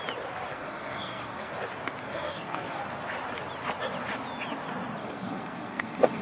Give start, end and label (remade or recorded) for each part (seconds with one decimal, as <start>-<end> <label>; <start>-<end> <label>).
0.0-0.5 recorded; 0.5-1.5 remade; 1.5-2.0 recorded; 2.0-2.8 remade; 2.8-5.0 recorded; 5.0-6.2 remade